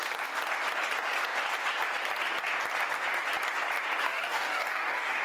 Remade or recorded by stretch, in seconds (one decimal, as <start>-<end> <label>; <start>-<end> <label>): 0.0-4.0 recorded; 4.0-5.2 remade